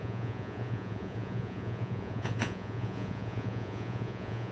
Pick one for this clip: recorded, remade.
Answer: remade